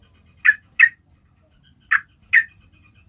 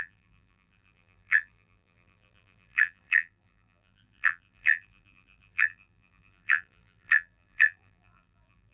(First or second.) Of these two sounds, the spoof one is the second